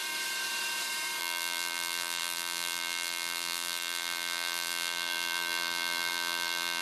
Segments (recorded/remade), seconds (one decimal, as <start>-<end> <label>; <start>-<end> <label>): 0.0-1.2 recorded; 1.2-6.8 remade